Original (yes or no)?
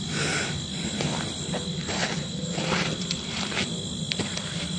yes